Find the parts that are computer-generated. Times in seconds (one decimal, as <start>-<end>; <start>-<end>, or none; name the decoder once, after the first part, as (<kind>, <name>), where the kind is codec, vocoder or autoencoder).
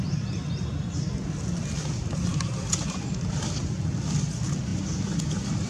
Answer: none